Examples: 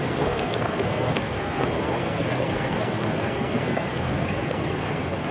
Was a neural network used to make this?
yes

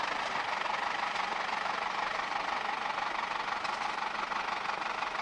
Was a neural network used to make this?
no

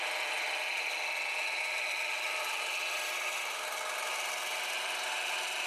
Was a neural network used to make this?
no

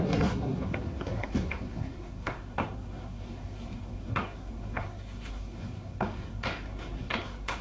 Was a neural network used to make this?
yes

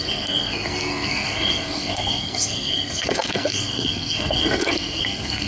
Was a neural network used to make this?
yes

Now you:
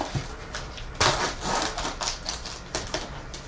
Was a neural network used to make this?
no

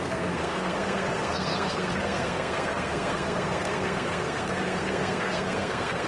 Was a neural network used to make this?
yes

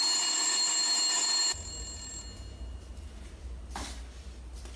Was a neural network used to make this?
no